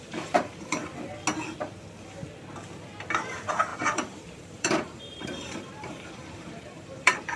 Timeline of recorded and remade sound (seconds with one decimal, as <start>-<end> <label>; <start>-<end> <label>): 0.0-0.8 remade; 0.8-3.3 recorded; 3.3-7.4 remade